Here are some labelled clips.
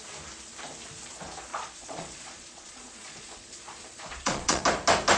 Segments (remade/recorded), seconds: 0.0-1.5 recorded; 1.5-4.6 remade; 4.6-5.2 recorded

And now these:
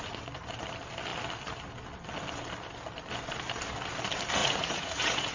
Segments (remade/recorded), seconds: 0.0-4.4 recorded; 4.4-5.3 remade

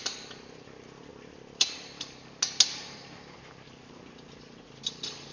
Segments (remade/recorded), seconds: 0.0-5.3 recorded

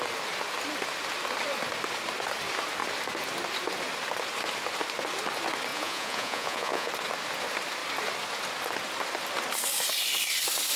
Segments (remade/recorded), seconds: 0.0-5.7 recorded; 5.7-6.9 remade; 6.9-10.8 recorded